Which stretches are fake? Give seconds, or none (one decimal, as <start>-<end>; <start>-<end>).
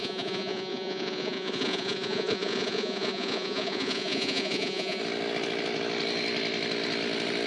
0.0-5.0